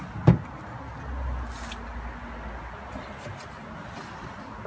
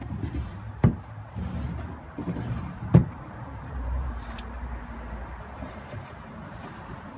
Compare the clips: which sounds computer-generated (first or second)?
second